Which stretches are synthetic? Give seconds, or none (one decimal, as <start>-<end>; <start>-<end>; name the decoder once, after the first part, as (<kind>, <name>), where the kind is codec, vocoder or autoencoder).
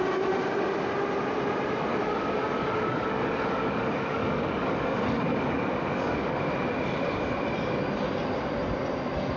1.9-6.4 (codec, DAC)